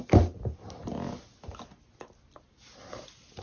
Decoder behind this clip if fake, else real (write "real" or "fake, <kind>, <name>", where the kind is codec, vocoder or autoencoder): real